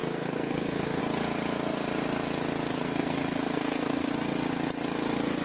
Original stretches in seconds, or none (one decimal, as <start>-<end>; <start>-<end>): 1.0-2.7; 4.1-5.4